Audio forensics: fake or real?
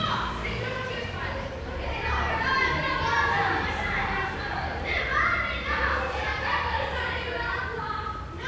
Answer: fake